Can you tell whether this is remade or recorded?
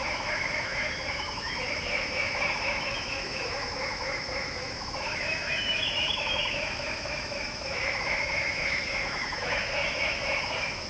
remade